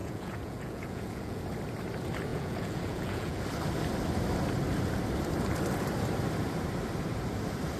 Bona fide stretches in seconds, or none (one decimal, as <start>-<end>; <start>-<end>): 1.4-2.3; 3.4-7.8